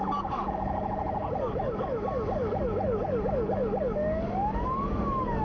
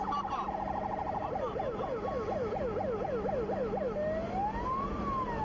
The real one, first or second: second